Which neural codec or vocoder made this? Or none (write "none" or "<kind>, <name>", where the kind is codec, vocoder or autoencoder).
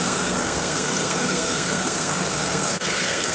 codec, SNAC